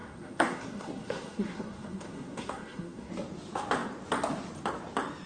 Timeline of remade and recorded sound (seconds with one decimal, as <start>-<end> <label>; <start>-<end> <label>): 0.0-3.1 remade; 3.1-5.3 recorded